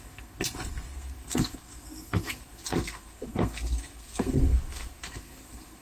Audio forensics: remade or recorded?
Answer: remade